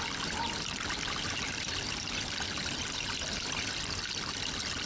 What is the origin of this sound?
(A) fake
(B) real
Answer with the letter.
B